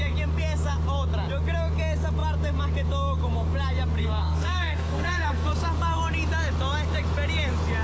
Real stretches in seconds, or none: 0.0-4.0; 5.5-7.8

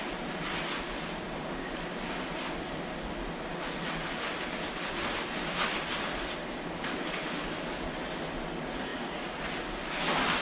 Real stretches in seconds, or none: 0.0-8.9; 9.4-10.4

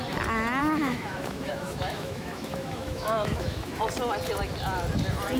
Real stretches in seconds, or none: 0.0-0.6; 3.8-5.4

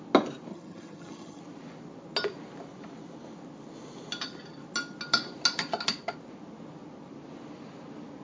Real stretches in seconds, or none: 0.0-0.5; 1.4-8.2

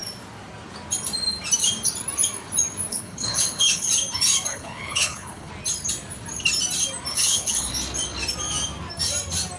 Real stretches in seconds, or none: 0.0-2.9; 3.9-4.5; 5.5-7.1; 7.7-9.6